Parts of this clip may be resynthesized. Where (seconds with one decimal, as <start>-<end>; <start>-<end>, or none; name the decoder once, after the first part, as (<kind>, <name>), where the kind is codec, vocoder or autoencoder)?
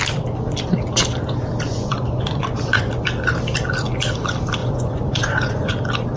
1.7-2.9 (vocoder, Vocos); 4.6-5.7